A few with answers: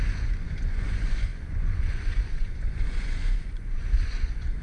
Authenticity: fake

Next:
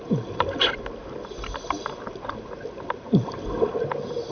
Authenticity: real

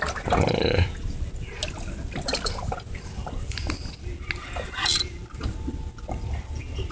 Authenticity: real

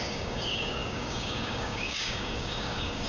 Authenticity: fake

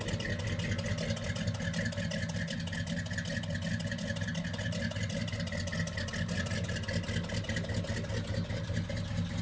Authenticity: real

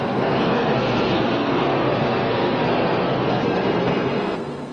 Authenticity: fake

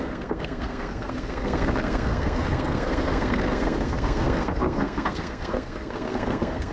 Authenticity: fake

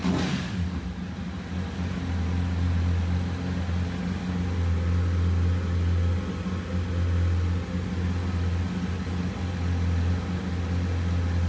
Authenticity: real